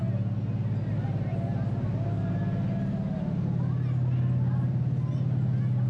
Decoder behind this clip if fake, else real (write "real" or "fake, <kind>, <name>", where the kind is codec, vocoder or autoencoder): real